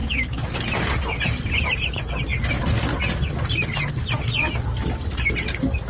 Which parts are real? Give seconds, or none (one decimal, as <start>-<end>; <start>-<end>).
0.0-5.9